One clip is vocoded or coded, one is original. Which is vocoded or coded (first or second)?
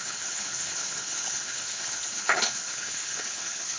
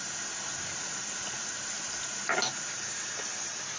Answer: first